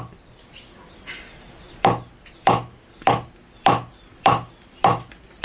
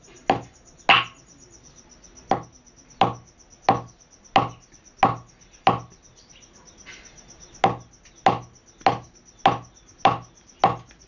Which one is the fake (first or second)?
first